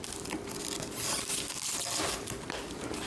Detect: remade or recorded recorded